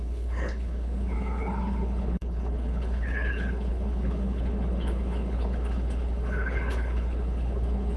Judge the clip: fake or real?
fake